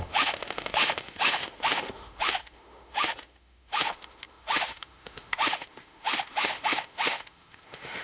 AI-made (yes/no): yes